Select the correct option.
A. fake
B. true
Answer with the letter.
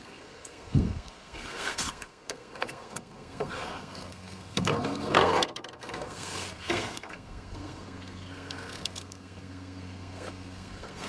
A